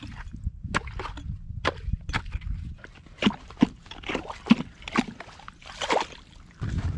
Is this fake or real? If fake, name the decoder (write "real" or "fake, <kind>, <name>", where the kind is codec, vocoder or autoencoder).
real